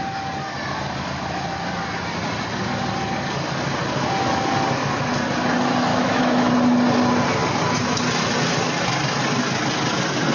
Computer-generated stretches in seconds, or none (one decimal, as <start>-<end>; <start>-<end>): 5.9-6.5